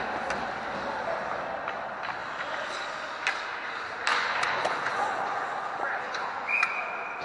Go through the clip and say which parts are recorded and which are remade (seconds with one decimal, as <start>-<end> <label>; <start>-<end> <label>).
0.0-4.1 recorded; 4.1-6.8 remade; 6.8-7.2 recorded